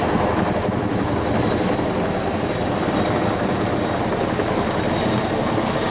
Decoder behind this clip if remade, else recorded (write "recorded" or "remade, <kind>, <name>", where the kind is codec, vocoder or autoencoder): recorded